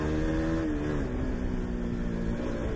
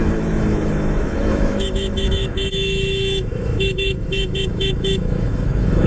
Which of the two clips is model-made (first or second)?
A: second